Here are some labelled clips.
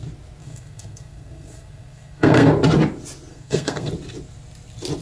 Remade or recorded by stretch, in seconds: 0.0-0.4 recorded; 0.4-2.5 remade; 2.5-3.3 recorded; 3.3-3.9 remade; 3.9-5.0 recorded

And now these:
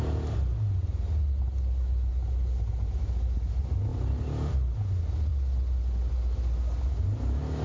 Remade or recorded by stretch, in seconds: 0.0-7.6 recorded

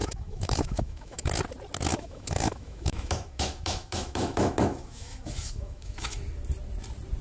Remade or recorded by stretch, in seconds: 0.0-1.3 remade; 1.3-1.9 recorded; 1.9-6.2 remade; 6.2-7.2 recorded

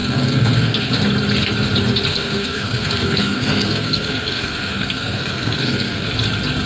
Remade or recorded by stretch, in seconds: 0.0-0.9 remade; 0.9-2.1 recorded; 2.1-6.1 remade; 6.1-6.7 recorded

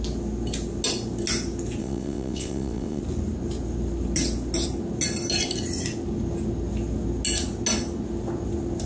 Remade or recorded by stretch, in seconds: 0.0-1.8 recorded; 1.8-3.0 remade; 3.0-8.9 recorded

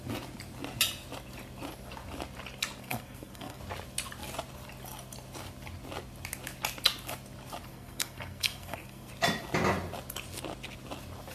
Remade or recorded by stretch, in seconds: 0.0-2.8 recorded; 2.8-3.6 remade; 3.6-7.7 recorded; 7.7-9.1 remade; 9.1-11.3 recorded